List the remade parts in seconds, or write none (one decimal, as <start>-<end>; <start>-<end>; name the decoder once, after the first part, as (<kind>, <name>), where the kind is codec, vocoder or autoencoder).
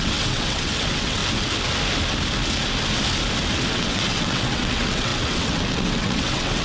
0.0-1.2 (vocoder, WaveNeXt); 3.7-6.6